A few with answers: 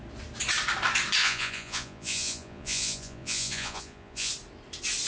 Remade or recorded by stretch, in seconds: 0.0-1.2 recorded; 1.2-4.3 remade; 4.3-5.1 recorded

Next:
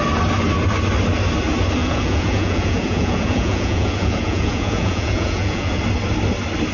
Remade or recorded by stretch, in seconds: 0.0-1.8 recorded; 1.8-5.8 remade; 5.8-6.7 recorded

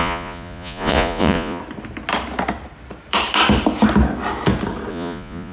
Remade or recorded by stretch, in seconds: 0.0-1.6 remade; 1.6-4.9 recorded; 4.9-5.5 remade

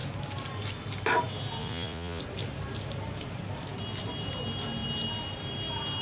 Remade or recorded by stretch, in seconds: 0.0-1.6 recorded; 1.6-2.2 remade; 2.2-6.0 recorded